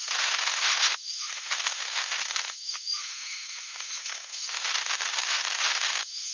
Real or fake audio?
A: fake